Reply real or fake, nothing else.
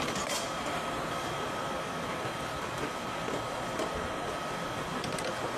fake